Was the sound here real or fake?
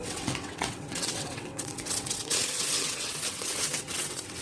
fake